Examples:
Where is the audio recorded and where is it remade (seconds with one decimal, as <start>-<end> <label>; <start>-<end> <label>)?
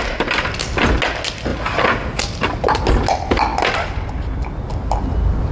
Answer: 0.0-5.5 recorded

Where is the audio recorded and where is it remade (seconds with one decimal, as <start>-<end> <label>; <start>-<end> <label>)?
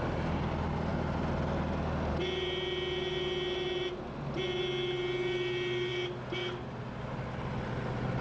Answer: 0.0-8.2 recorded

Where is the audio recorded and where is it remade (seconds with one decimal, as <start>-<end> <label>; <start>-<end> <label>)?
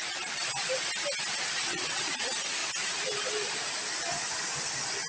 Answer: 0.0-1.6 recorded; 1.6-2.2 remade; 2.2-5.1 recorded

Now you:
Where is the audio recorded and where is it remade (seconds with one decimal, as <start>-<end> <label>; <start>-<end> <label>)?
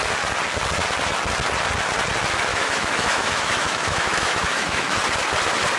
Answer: 0.0-2.5 recorded; 2.5-5.0 remade; 5.0-5.8 recorded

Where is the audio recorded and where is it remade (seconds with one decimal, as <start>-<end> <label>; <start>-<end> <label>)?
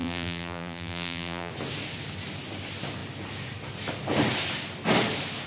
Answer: 0.0-1.5 remade; 1.5-5.5 recorded